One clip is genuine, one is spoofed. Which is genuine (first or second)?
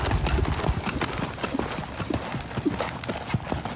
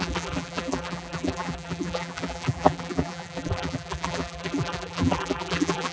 first